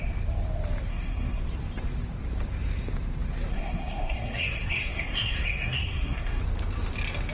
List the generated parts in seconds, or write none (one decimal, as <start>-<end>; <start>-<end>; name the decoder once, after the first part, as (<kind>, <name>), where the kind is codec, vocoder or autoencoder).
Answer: 0.9-1.4 (codec, SNAC); 3.5-6.4